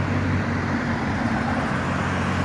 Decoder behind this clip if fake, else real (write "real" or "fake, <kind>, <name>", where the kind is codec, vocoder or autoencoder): real